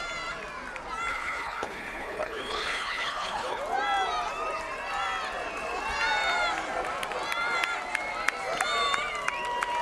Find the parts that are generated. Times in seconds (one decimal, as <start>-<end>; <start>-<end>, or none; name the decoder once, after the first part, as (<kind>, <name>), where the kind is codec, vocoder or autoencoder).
1.1-3.6 (codec, HILCodec)